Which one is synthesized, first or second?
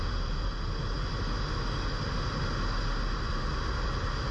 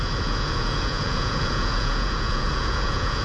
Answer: second